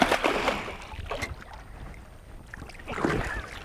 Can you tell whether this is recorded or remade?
recorded